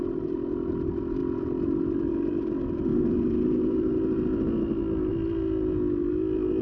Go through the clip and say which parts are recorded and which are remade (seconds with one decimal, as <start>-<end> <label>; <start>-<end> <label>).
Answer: 0.0-6.6 recorded